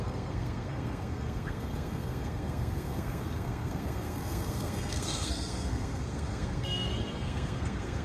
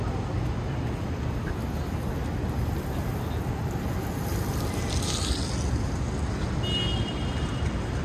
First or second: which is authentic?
second